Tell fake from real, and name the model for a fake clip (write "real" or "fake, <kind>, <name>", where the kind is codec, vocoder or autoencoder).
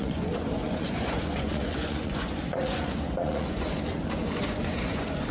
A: fake, vocoder, Vocos